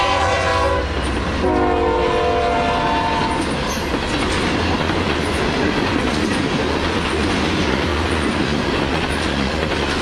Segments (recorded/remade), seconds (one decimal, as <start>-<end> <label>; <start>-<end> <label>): 0.0-0.5 remade; 0.5-4.8 recorded; 4.8-10.0 remade